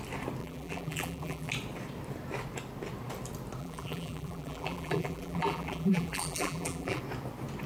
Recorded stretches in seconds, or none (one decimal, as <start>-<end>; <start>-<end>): 0.0-0.4; 1.5-3.6; 7.0-7.7